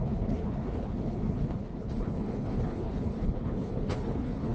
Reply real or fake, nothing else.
fake